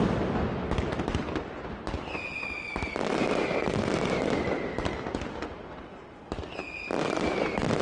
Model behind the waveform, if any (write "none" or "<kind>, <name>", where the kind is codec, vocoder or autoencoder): none